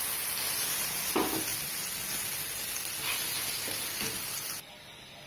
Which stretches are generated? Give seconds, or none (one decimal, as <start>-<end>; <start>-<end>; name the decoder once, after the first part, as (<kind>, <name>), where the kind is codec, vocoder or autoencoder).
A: none